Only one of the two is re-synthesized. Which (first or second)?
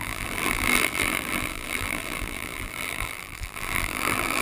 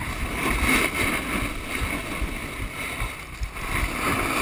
first